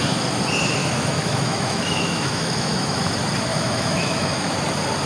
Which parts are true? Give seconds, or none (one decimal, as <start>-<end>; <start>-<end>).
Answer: 0.0-0.8; 3.1-3.5; 4.5-5.1